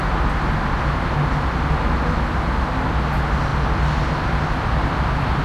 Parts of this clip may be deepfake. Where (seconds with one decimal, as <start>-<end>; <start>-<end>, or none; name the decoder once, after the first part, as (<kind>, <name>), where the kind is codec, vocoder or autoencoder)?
none